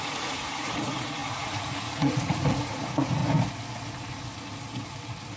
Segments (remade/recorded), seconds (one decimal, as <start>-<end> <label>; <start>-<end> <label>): 0.0-3.2 remade; 3.2-5.4 recorded